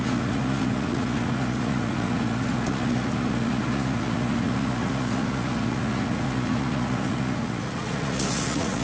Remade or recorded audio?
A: remade